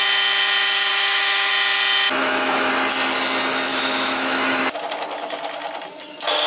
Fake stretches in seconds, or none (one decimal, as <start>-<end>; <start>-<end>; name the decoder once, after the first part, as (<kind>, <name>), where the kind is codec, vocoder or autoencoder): 0.9-1.5 (autoencoder, DAC-VAE); 2.2-2.7; 3.7-4.6